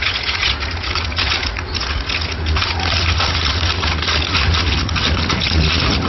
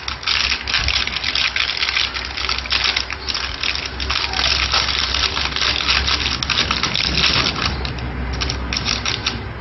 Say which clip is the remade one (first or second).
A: first